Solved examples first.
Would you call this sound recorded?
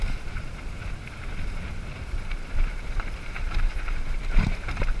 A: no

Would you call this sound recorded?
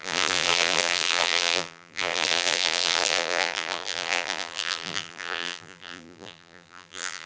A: no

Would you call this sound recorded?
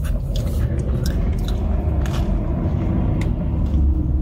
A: yes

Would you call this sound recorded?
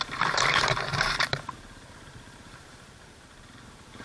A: no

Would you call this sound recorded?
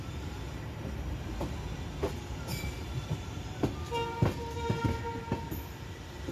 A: yes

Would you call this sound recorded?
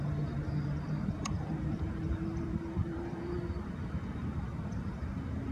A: no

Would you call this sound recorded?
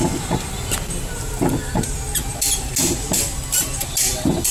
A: no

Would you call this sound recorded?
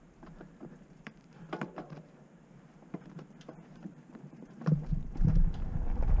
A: no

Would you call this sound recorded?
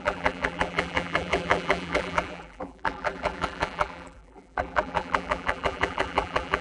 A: no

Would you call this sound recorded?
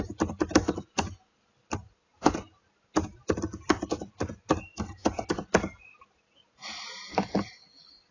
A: yes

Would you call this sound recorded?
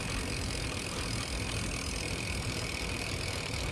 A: yes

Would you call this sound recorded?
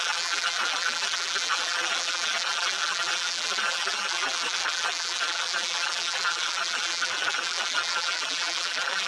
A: no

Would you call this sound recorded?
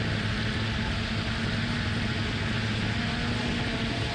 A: yes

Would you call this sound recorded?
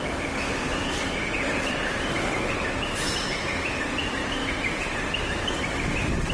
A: no